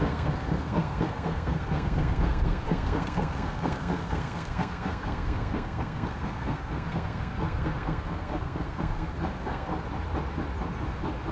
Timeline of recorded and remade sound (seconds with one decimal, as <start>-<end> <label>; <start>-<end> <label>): 0.0-9.7 remade; 9.7-11.3 recorded